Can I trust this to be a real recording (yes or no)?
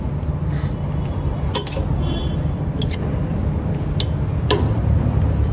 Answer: yes